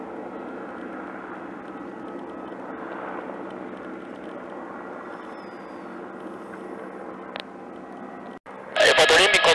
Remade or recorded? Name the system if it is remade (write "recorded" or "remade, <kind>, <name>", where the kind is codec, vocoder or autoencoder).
recorded